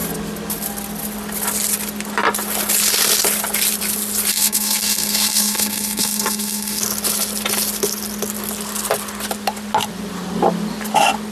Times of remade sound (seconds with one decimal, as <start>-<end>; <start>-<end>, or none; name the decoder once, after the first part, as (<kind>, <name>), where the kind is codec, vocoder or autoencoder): 4.3-6.8 (codec, SNAC)